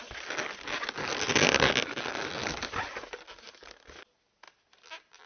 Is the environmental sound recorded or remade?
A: recorded